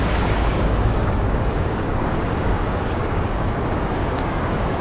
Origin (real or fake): fake